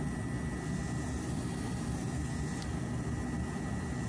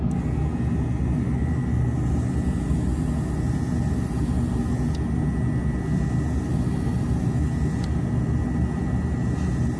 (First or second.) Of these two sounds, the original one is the second